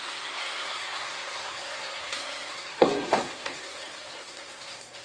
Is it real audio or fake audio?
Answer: fake